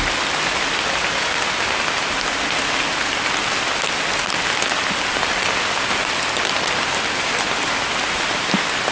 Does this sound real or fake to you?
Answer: real